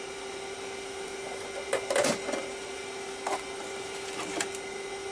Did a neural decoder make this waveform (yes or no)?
no